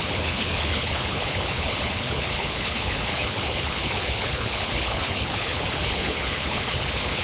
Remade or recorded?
remade